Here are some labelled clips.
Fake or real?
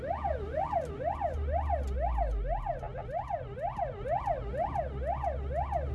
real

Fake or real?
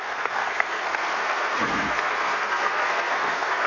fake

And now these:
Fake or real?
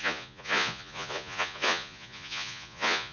fake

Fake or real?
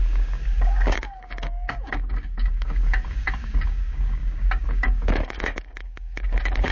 fake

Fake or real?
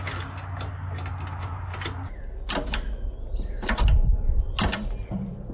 real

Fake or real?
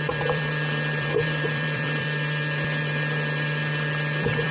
fake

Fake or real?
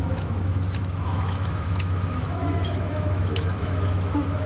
fake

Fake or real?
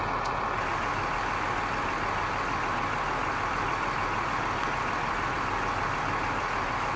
real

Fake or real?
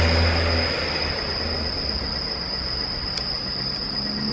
real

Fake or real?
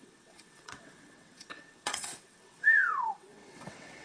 fake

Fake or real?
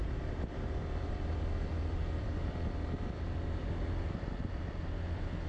real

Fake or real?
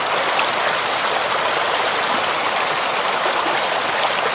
real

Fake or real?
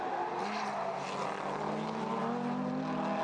real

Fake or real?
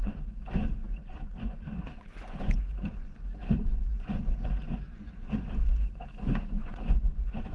fake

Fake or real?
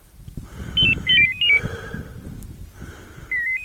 real